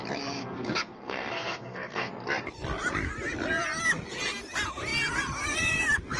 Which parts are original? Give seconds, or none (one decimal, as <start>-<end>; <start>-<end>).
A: 0.0-0.4; 2.1-6.2